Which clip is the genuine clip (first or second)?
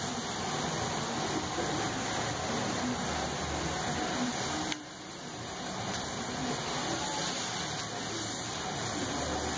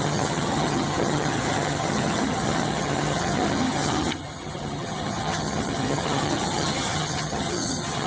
first